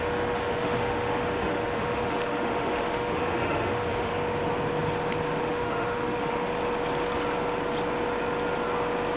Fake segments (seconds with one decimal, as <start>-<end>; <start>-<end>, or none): 0.0-4.1; 5.4-6.5